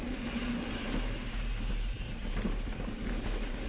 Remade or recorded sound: recorded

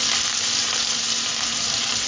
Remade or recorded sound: recorded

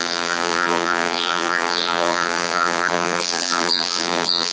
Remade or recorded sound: remade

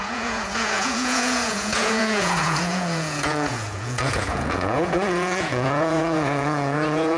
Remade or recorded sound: remade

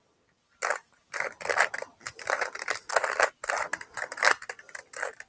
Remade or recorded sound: recorded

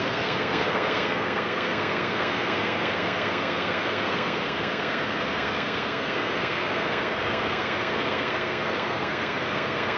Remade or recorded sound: remade